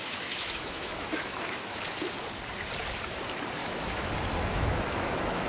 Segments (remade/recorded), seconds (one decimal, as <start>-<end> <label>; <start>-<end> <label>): 0.0-1.8 remade; 1.8-3.6 recorded; 3.6-4.1 remade; 4.1-4.5 recorded; 4.5-5.5 remade